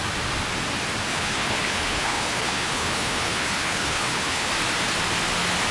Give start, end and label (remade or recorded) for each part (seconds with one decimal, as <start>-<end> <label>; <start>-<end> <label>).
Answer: 0.0-1.1 recorded; 1.1-4.5 remade; 4.5-5.7 recorded

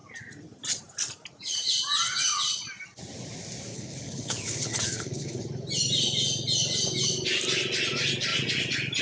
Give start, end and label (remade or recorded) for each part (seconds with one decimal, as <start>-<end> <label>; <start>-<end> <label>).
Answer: 0.0-3.7 recorded; 3.7-5.4 remade; 5.4-9.0 recorded

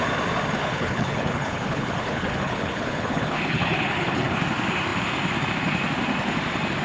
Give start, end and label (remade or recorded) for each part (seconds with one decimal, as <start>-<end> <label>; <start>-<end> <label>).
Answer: 0.0-0.6 recorded; 0.6-4.4 remade; 4.4-6.8 recorded